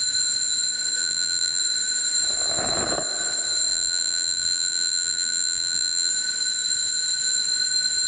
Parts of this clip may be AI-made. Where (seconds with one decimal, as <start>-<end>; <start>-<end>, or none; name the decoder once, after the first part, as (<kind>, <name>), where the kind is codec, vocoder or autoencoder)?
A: 1.0-1.6 (vocoder, BigVGAN v2); 3.7-6.1